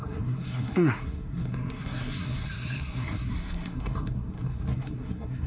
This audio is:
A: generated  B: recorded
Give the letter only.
A